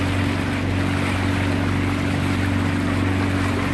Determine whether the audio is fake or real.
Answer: real